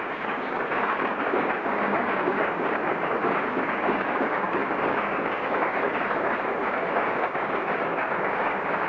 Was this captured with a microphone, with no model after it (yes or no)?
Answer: no